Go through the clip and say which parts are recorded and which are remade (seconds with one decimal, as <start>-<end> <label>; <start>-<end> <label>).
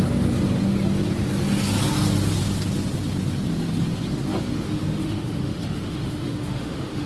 0.0-4.3 recorded; 4.3-7.1 remade